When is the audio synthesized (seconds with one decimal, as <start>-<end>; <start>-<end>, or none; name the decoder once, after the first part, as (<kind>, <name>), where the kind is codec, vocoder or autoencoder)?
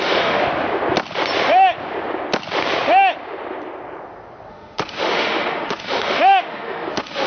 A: 0.0-0.4 (autoencoder, DAC-VAE); 4.5-7.3